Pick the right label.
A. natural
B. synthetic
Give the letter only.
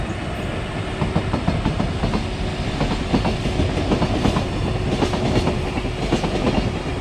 A